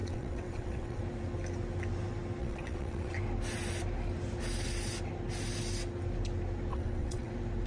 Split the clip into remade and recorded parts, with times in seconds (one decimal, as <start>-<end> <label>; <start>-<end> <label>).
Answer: 0.0-1.0 remade; 1.0-2.4 recorded; 2.4-3.1 remade; 3.1-6.7 recorded; 6.7-7.3 remade; 7.3-7.7 recorded